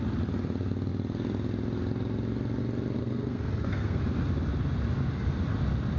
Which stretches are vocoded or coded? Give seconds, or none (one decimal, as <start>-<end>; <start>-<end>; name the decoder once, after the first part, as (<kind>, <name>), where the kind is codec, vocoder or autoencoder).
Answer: 3.0-4.0 (codec, SNAC)